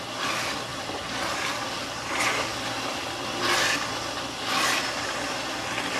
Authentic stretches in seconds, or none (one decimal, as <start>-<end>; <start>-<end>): 0.0-6.0

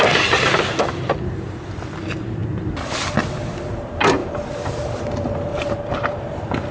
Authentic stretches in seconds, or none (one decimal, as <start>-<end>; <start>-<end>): 0.0-4.2; 5.0-5.5; 6.1-6.7

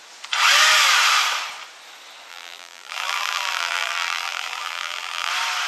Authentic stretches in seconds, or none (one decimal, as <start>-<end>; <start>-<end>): 0.0-2.3; 5.3-5.7

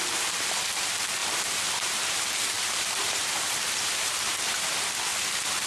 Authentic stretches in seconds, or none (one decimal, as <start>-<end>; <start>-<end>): 0.0-1.2; 4.6-5.7